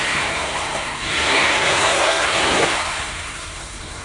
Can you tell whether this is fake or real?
fake